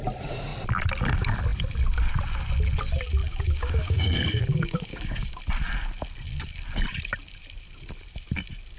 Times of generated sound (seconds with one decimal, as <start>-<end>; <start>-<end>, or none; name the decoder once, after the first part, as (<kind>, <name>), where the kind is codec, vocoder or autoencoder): 3.2-5.4 (codec, DAC)